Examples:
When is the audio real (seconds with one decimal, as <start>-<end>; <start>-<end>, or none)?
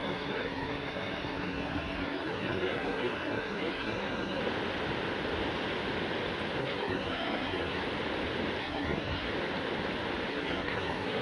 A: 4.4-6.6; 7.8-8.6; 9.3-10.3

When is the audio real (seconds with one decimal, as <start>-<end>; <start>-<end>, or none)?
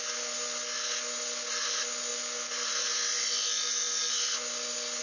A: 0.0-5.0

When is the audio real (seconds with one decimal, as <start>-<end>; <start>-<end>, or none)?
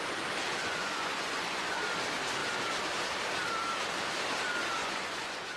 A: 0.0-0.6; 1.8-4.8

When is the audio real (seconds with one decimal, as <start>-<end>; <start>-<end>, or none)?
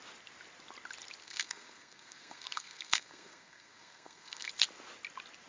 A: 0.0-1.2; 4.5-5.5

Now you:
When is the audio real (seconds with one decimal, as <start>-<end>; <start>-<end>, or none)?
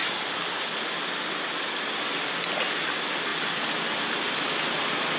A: 0.0-5.2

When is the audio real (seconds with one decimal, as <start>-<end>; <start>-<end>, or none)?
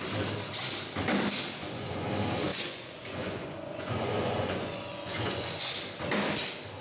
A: 0.0-1.6; 2.1-2.5; 5.7-6.8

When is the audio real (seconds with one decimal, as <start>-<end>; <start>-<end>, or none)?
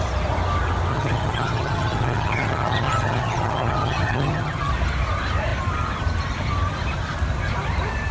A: 0.0-0.9; 4.7-8.1